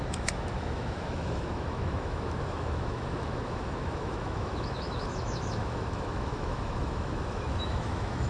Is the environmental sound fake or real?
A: fake